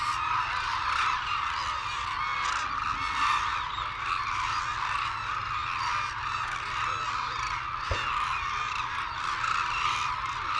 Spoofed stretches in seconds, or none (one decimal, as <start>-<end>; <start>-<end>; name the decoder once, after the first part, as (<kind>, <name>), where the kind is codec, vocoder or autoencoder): none